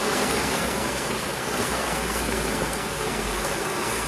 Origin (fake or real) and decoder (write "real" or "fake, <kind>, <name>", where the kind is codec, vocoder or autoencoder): fake, codec, SNAC